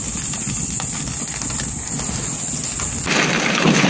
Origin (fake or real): real